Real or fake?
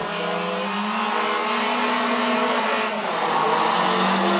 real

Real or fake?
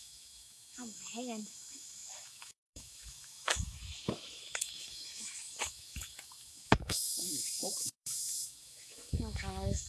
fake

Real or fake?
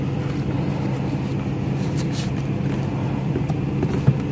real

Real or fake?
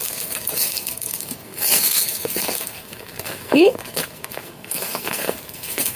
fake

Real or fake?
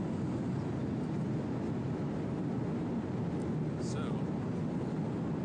real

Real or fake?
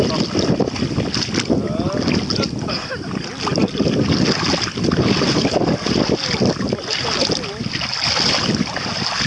real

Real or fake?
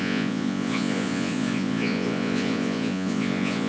fake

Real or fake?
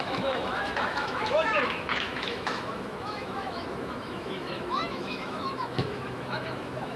fake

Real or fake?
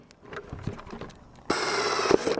real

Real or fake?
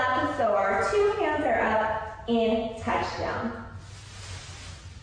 real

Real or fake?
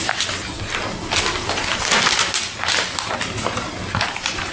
real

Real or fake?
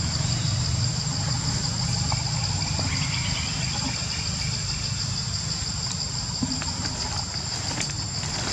real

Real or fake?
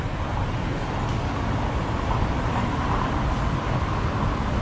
real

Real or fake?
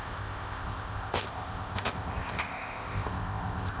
fake